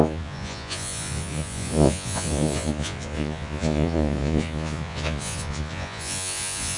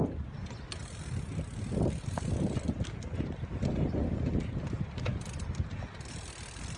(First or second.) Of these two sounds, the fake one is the first